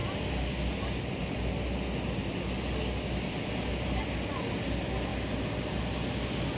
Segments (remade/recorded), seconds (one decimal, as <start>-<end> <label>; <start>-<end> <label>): 0.0-6.6 recorded